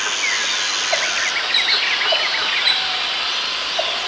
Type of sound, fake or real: real